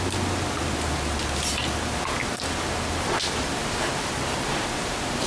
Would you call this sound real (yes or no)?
yes